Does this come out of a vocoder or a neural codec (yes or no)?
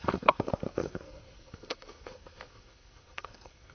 yes